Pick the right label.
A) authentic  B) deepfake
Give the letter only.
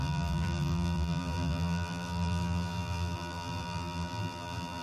B